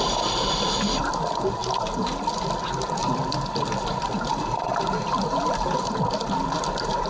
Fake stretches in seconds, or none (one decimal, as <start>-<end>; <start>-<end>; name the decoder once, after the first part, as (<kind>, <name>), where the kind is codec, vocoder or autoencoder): none